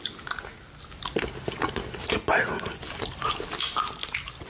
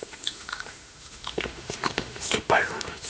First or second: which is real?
first